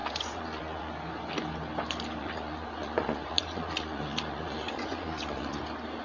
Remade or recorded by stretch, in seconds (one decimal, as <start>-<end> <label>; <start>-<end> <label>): 0.0-0.9 remade; 0.9-2.2 recorded; 2.2-5.6 remade; 5.6-6.0 recorded